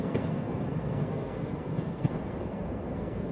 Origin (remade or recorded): remade